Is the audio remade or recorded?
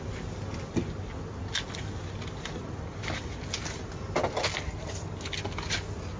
recorded